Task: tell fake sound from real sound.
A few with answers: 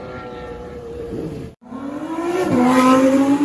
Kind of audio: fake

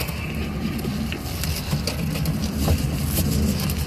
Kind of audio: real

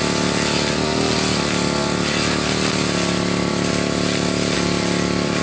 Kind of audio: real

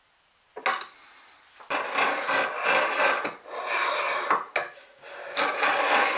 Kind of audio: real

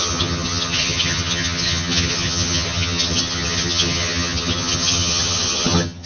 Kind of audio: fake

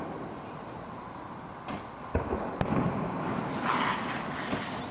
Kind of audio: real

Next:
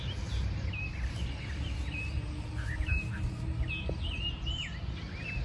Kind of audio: real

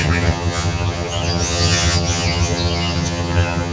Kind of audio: fake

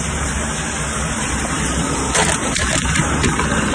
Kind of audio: fake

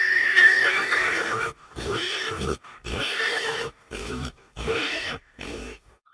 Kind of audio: fake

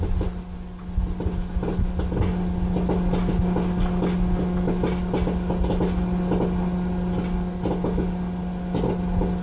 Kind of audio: real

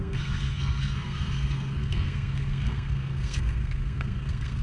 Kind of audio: fake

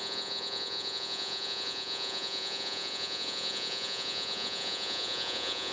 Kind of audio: fake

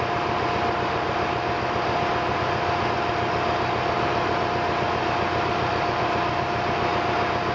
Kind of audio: real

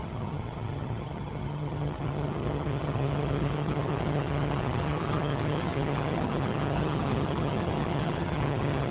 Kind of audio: fake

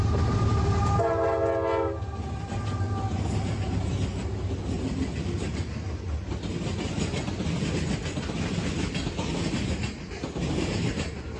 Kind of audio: real